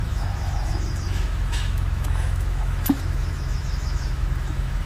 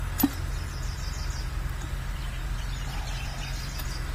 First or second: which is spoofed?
first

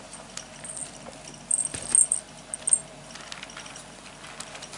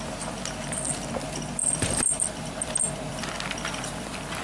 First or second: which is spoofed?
second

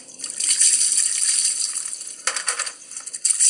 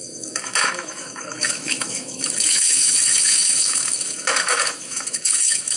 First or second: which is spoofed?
second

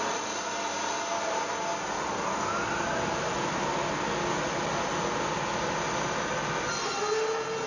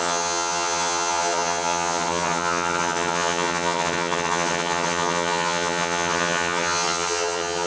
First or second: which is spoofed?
second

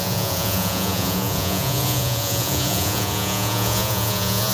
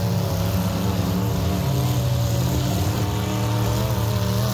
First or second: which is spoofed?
first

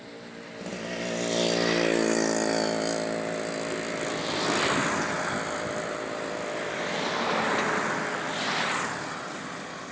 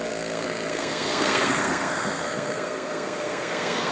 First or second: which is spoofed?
second